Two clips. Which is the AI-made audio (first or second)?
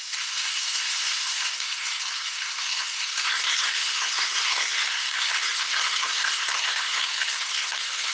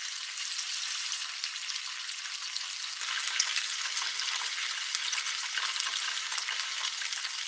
first